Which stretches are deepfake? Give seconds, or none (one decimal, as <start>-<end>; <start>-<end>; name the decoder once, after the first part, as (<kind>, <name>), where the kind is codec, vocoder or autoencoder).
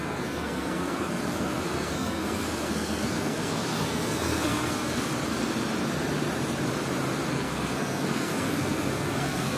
0.0-5.1 (codec, SNAC); 7.3-9.6